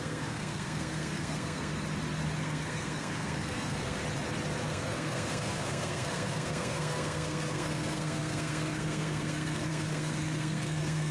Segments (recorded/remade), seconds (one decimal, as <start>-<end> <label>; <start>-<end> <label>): 0.0-1.7 remade; 1.7-2.4 recorded; 2.4-4.0 remade; 4.0-4.6 recorded; 4.6-11.1 remade